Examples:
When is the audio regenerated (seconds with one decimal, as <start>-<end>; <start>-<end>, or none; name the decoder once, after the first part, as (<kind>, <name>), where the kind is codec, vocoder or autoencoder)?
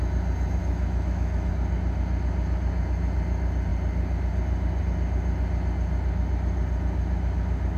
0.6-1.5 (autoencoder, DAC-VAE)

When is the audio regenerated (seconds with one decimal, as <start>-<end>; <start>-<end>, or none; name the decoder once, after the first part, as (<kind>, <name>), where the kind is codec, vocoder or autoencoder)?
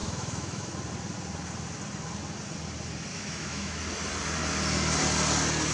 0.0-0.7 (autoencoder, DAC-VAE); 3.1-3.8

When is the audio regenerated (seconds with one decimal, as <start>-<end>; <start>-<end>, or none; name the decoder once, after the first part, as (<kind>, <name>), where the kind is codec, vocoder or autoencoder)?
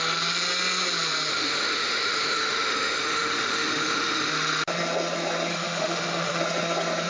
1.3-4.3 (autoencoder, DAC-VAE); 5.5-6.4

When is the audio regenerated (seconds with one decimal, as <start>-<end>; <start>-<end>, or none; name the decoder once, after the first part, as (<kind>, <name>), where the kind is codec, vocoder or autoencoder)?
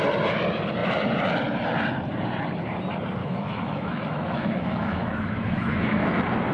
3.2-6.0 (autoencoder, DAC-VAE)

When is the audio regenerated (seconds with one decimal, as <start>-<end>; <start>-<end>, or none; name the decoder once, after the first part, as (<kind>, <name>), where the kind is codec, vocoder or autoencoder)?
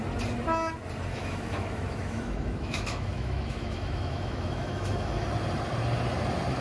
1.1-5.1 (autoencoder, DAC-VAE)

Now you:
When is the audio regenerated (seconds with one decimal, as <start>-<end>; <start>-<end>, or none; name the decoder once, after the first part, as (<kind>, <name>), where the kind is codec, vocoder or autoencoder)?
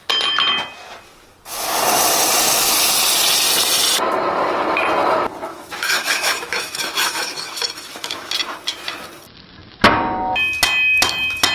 5.5-8.3 (autoencoder, DAC-VAE)